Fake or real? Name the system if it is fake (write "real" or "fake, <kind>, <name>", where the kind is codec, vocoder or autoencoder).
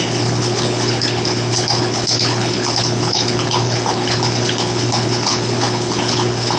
fake, codec, HILCodec